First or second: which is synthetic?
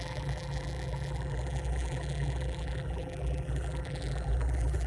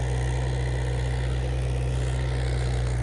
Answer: first